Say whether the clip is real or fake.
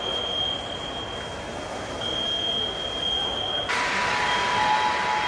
real